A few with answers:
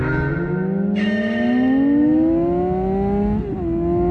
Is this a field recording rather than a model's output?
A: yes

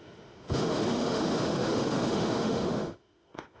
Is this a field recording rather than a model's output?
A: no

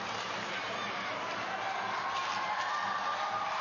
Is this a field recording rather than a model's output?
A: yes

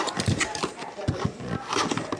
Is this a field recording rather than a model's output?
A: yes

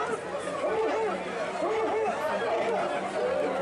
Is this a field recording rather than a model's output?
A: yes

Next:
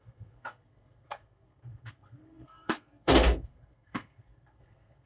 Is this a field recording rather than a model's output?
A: no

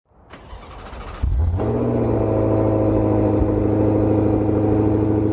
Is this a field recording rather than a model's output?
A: yes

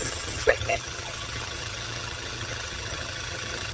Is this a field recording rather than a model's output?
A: no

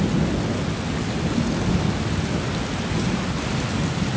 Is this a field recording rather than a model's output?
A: yes